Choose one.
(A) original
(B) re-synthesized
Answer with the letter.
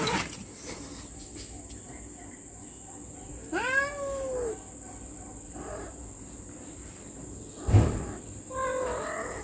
A